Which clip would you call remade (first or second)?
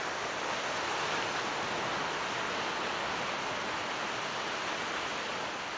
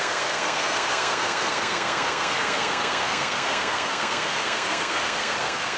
second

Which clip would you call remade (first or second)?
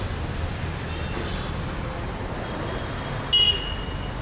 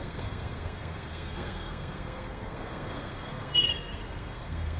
second